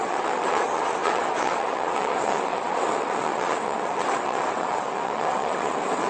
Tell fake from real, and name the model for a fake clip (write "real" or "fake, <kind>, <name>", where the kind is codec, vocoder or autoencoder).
fake, vocoder, WaveNeXt